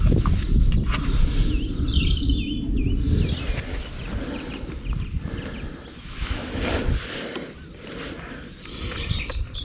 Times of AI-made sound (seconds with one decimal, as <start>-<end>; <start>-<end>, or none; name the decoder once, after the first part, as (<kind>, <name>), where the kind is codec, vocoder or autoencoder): 5.9-6.6 (autoencoder, DAC-VAE)